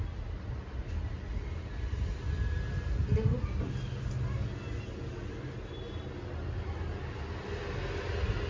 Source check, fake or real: real